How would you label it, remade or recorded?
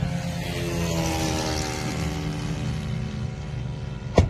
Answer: recorded